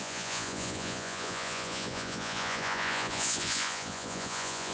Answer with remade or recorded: remade